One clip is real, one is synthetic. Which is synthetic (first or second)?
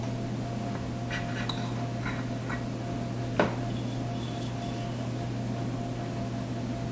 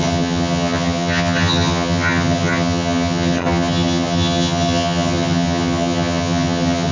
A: second